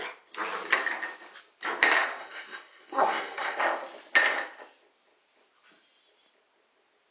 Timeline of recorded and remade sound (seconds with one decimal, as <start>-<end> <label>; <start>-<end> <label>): 0.0-2.2 recorded; 2.2-3.6 remade; 3.6-7.1 recorded